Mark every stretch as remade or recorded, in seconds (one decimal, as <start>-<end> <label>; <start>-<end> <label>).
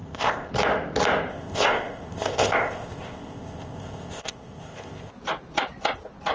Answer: 0.0-0.5 remade; 0.5-1.3 recorded; 1.3-5.1 remade; 5.1-6.3 recorded